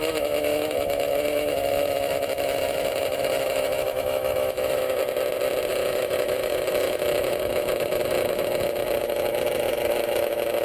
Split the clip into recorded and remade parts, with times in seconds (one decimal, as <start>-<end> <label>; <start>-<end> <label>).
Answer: 0.0-5.0 remade; 5.0-5.7 recorded; 5.7-10.6 remade